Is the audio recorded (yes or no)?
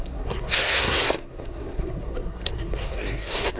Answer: no